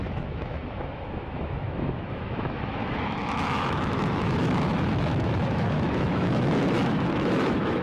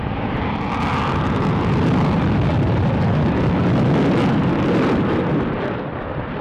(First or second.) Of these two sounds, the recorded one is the second